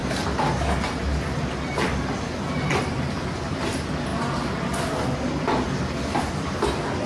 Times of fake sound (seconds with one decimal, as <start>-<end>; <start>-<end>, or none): 2.8-4.1; 6.3-7.1